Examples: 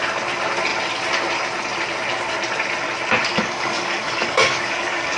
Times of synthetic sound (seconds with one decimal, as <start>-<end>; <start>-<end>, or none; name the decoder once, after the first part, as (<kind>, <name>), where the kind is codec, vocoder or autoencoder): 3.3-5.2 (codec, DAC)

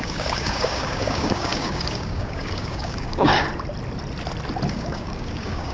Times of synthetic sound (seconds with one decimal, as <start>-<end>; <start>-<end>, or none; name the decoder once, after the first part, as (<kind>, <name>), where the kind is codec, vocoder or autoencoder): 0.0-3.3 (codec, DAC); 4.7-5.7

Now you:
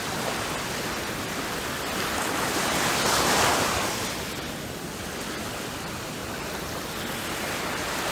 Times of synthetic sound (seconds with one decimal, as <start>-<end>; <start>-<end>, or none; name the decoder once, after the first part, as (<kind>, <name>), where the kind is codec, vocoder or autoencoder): 3.5-4.0 (codec, DAC)